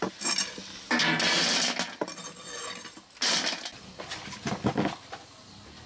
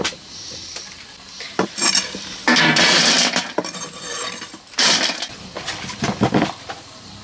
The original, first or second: first